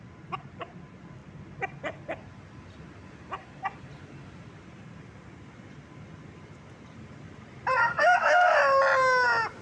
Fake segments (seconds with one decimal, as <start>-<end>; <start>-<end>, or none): 7.8-8.6